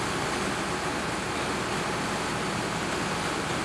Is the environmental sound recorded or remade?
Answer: recorded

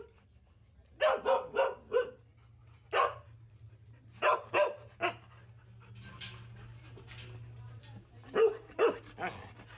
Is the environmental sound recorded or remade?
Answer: recorded